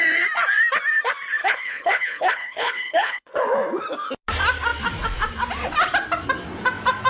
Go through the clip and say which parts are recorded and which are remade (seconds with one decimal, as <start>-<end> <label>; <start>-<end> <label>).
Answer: 0.0-1.4 recorded; 1.4-3.4 remade; 3.4-7.1 recorded